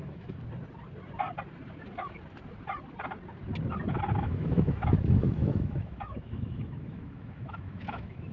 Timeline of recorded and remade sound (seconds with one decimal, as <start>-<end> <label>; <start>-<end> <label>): 0.0-0.4 remade; 0.4-4.2 recorded; 4.2-8.3 remade